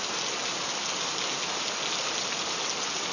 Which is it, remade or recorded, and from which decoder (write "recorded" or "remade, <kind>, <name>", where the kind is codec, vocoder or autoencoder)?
recorded